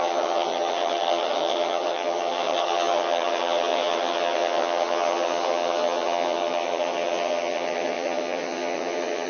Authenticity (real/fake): fake